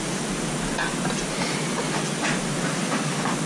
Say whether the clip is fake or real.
real